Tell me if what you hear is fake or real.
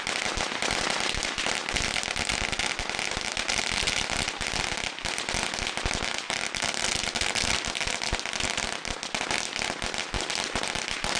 real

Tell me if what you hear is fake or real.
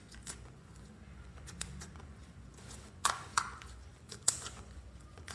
fake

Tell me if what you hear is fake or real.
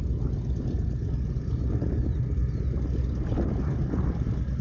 real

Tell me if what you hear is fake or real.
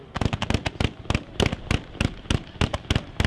real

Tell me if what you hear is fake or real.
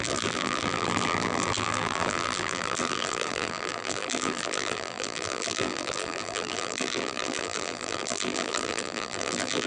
fake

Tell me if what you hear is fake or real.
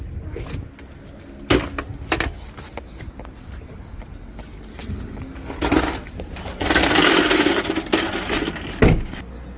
real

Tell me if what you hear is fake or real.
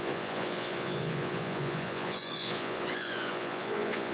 fake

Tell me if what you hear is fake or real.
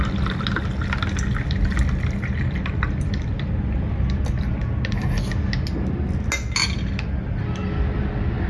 real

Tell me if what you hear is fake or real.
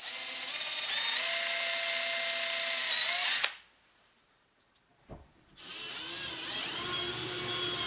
real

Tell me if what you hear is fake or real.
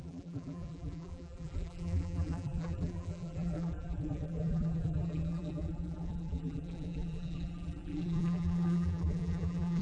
fake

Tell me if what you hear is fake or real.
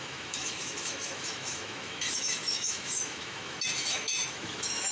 fake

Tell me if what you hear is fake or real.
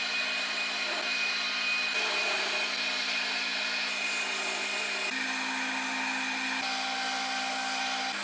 real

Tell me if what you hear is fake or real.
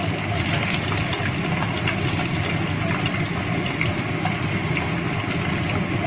real